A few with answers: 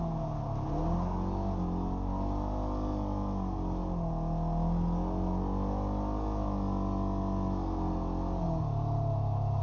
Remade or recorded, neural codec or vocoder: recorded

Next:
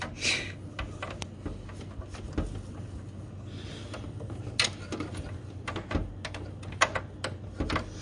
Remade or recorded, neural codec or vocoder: recorded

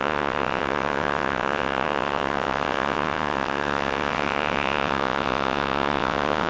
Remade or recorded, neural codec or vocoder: remade, vocoder, WaveNeXt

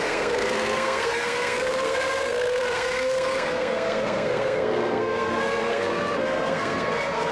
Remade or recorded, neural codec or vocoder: remade, codec, SNAC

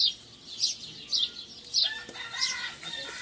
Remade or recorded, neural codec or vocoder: recorded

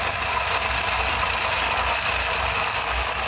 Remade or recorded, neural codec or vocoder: recorded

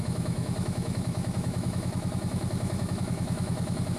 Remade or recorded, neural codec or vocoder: remade, autoencoder, DAC-VAE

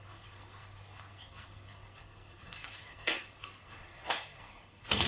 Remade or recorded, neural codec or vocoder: remade, codec, SNAC